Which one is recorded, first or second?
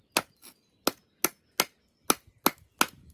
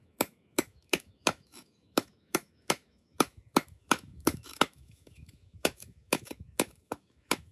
first